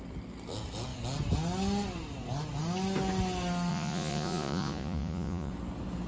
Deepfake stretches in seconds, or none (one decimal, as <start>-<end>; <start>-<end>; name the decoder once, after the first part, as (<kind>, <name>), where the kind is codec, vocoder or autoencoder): 3.7-5.5 (vocoder, Vocos)